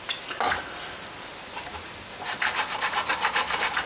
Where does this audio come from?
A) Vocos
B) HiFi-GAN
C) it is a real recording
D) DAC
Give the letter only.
C